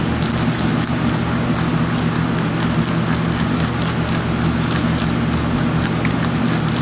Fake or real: real